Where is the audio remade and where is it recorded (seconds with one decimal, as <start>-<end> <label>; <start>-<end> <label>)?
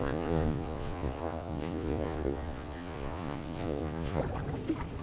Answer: 0.0-4.2 remade; 4.2-5.0 recorded